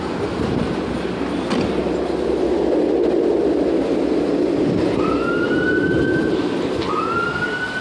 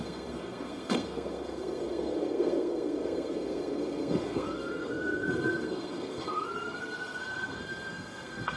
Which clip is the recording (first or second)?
first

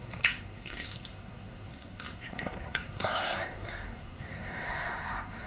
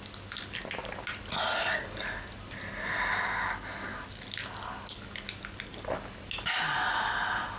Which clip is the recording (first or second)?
second